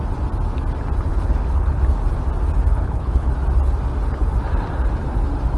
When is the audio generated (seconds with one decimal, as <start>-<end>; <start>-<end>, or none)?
1.1-1.8; 2.7-3.3